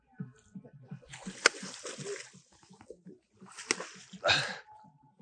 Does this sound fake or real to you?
real